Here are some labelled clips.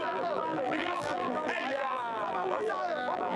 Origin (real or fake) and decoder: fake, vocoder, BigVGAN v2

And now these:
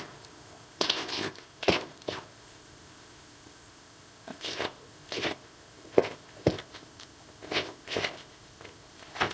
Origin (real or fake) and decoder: fake, codec, ZipCodec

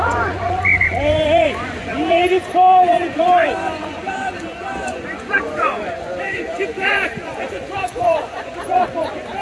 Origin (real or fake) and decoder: fake, vocoder, Vocos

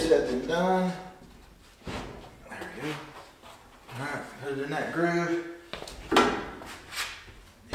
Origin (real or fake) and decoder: real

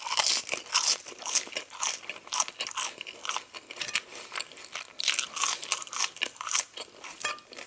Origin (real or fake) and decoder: real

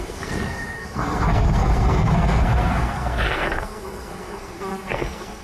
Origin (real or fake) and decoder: fake, codec, SNAC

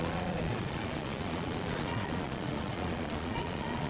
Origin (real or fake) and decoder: fake, vocoder, Vocos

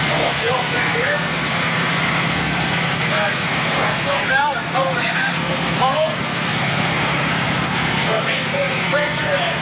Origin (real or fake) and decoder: fake, codec, SNAC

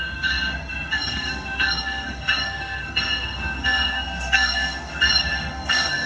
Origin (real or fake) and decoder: fake, codec, SNAC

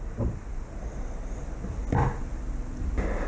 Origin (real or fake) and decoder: real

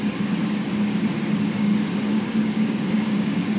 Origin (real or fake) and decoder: fake, codec, DAC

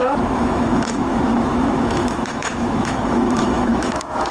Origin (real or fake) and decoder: fake, autoencoder, DAC-VAE